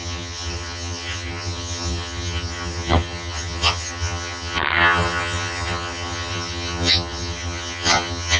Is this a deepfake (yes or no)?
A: yes